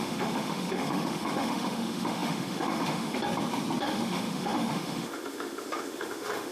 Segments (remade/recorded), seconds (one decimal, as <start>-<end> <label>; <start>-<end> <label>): 0.0-3.2 remade; 3.2-3.8 recorded; 3.8-6.5 remade

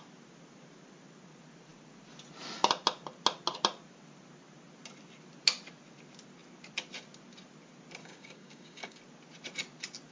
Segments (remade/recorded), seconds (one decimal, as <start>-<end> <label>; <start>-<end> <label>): 0.0-8.0 recorded; 8.0-9.0 remade; 9.0-10.1 recorded

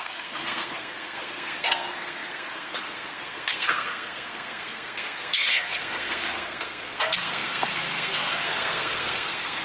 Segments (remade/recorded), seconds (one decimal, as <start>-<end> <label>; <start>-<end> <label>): 0.0-9.6 remade

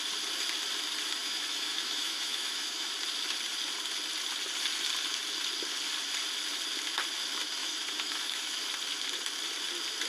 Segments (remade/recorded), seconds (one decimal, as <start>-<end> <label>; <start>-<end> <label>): 0.0-1.2 recorded; 1.2-2.9 remade; 2.9-7.6 recorded; 7.6-8.6 remade; 8.6-10.1 recorded

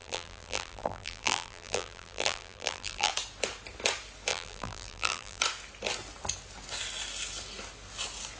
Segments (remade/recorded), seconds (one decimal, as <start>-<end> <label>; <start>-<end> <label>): 0.0-3.1 remade; 3.1-4.3 recorded; 4.3-5.4 remade; 5.4-8.4 recorded

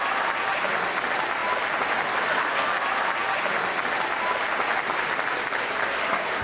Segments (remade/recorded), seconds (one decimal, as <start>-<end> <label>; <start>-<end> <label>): 0.0-6.4 recorded